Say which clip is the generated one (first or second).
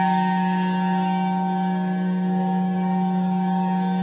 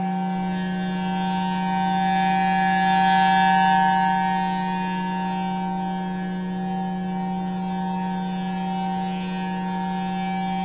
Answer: first